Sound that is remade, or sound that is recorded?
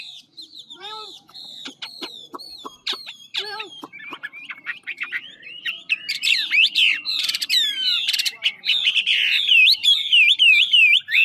remade